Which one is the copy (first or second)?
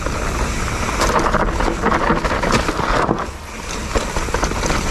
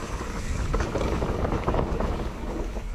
second